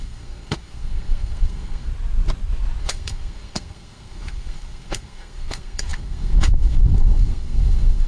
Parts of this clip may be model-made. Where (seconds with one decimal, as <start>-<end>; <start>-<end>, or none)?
0.0-1.9; 2.8-8.1